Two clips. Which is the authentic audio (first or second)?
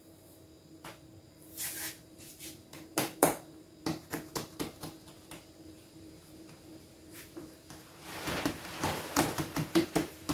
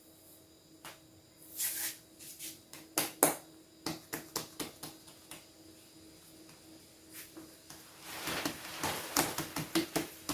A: second